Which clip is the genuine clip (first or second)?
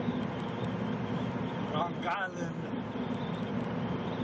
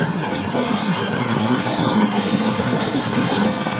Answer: first